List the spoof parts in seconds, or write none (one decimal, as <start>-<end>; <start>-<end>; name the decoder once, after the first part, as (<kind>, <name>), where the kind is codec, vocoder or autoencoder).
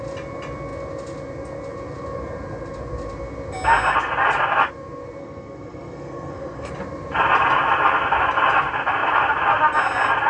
5.2-6.7 (codec, SNAC)